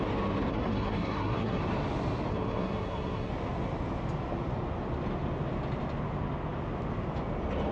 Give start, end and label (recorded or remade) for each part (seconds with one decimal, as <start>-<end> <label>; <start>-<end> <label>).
0.0-0.5 recorded; 0.5-1.6 remade; 1.6-2.3 recorded; 2.3-3.3 remade; 3.3-7.7 recorded